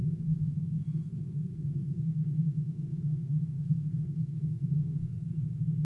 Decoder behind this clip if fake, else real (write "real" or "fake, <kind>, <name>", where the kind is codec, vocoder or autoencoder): fake, codec, SNAC